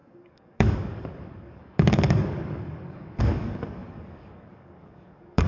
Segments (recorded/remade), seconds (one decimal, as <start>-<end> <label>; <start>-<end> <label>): 0.0-5.5 remade